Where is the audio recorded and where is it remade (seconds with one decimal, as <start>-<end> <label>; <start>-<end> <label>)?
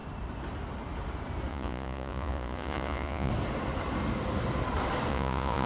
0.0-1.5 recorded; 1.5-3.3 remade; 3.3-5.1 recorded; 5.1-5.7 remade